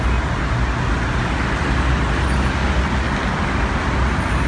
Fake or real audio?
real